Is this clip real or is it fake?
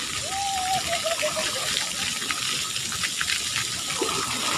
real